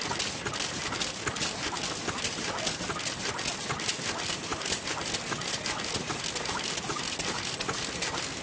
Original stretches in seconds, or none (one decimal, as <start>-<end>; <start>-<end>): 0.0-8.4